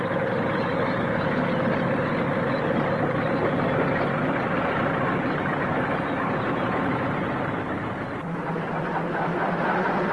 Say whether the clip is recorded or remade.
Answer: remade